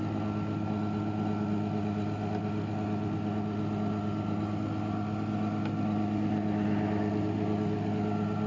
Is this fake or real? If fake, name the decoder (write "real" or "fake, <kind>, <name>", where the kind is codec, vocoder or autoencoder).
real